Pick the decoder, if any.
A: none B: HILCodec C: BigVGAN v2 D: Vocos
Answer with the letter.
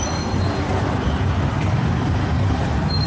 A